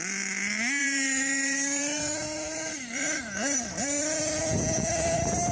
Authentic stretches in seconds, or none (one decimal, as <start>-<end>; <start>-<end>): 0.0-0.8; 4.0-5.5